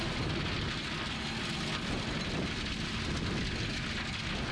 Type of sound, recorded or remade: recorded